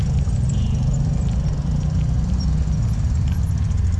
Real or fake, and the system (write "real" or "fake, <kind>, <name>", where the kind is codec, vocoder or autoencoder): real